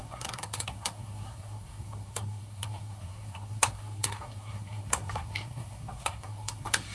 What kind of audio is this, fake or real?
fake